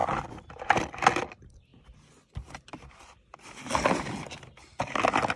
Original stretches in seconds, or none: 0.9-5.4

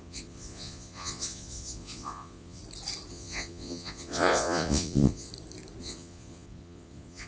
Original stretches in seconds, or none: 2.6-3.1; 5.3-5.8

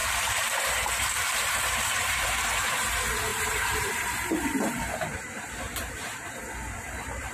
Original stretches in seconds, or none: none

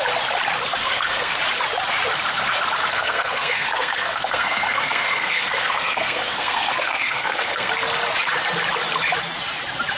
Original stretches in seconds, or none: 0.0-0.8; 1.4-2.9; 7.7-10.0

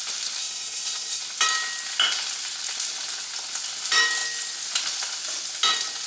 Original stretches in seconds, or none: 0.0-0.4; 1.2-6.1

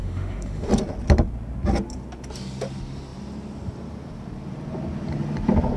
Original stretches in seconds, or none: 0.7-5.8

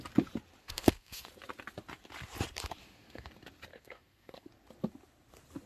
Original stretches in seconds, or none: 0.0-0.6; 1.3-2.8; 3.3-3.7; 4.5-5.7

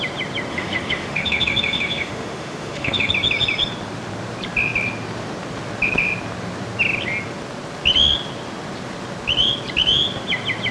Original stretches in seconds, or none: 0.0-0.5; 3.1-10.7